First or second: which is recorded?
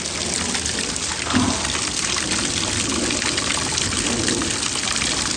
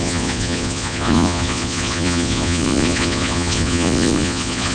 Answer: first